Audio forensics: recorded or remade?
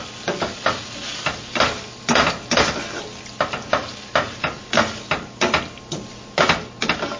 recorded